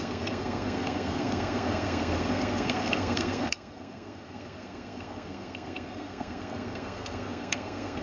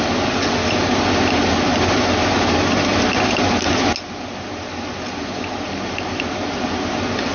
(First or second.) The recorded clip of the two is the second